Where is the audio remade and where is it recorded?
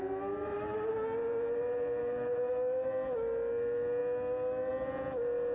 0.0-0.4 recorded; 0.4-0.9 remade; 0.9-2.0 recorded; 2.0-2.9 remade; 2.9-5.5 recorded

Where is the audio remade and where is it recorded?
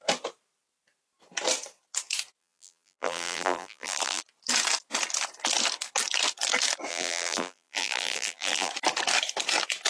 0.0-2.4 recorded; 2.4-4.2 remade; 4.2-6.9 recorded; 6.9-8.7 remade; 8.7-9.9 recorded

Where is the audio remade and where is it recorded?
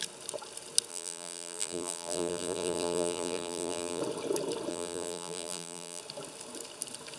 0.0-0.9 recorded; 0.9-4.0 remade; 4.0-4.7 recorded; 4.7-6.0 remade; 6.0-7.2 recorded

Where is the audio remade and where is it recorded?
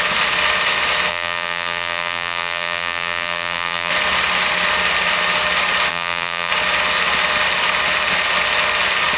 0.0-1.1 recorded; 1.1-3.9 remade; 3.9-5.9 recorded; 5.9-6.5 remade; 6.5-9.2 recorded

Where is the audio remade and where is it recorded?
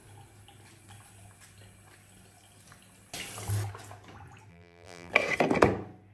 0.0-4.5 recorded; 4.5-5.1 remade; 5.1-6.1 recorded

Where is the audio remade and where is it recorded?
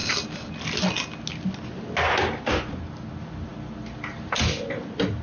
0.0-3.5 recorded; 3.5-4.4 remade; 4.4-5.2 recorded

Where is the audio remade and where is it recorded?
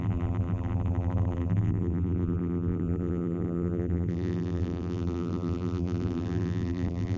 0.0-7.2 remade